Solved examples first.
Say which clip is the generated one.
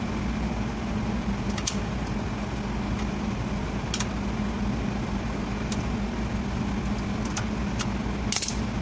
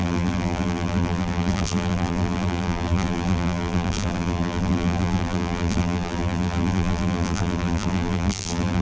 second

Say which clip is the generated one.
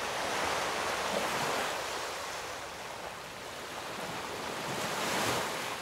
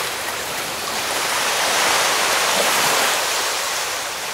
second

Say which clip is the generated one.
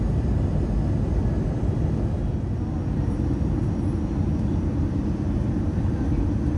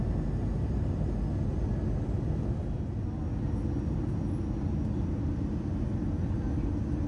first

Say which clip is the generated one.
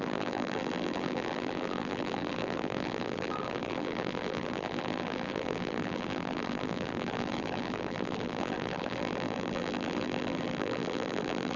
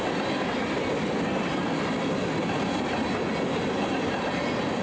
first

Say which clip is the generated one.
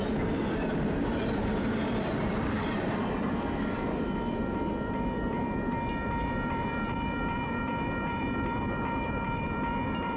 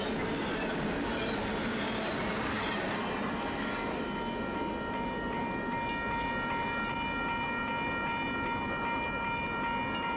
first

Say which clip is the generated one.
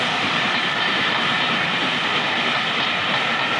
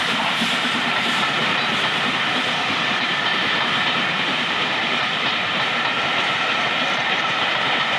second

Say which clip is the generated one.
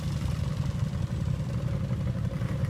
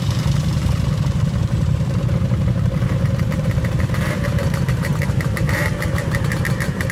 second